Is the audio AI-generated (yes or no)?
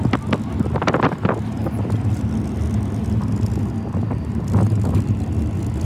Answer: no